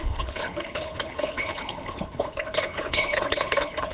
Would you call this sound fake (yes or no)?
yes